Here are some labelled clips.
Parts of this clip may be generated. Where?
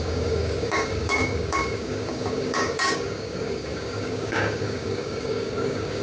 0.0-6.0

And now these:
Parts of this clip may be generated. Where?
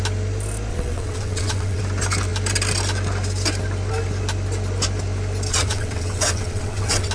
0.7-1.8; 5.5-7.1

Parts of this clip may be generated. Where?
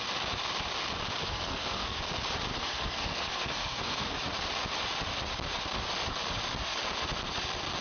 1.2-2.0; 2.5-4.1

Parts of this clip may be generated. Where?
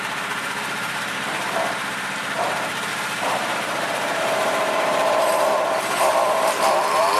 0.0-7.2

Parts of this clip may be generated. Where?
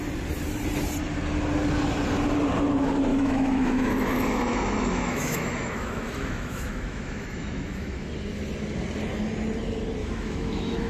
3.1-8.1; 10.0-10.9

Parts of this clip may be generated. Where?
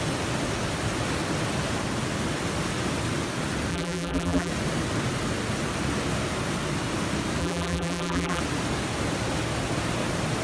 3.7-4.5; 7.4-8.4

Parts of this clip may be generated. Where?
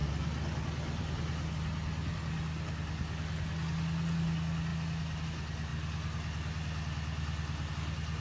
none